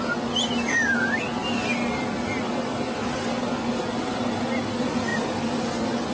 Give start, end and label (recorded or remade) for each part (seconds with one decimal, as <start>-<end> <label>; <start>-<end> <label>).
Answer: 0.0-6.1 recorded